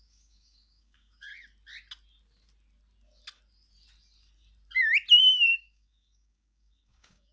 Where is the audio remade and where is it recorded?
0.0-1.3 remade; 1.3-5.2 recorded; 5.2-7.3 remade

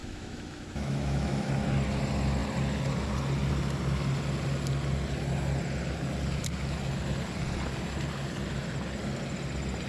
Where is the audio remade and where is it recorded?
0.0-1.5 remade; 1.5-9.9 recorded

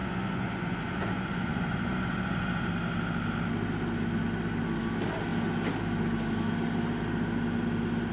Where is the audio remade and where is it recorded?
0.0-2.7 remade; 2.7-8.1 recorded